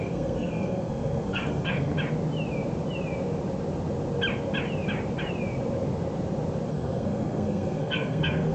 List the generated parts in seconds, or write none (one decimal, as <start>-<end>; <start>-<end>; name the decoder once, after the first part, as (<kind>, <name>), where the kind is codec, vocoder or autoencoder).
0.0-1.9 (codec, SNAC); 6.7-8.5